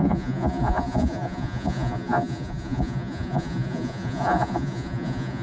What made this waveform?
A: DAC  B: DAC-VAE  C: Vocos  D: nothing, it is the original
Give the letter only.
C